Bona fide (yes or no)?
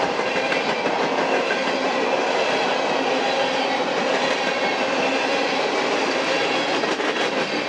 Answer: yes